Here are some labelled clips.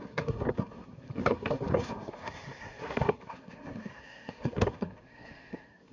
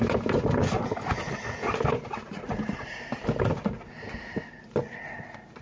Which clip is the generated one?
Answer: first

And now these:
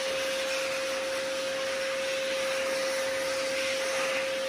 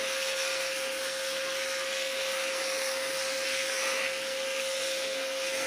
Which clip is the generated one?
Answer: second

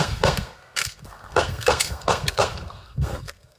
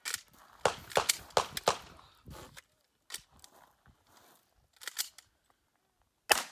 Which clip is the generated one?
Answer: first